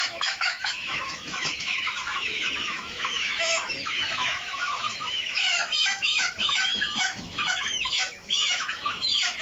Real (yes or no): no